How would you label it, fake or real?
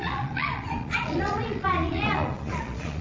fake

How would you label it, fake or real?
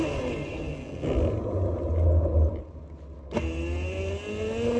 real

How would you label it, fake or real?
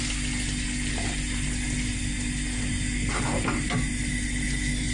real